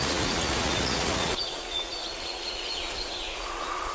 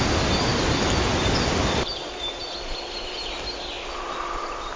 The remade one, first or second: first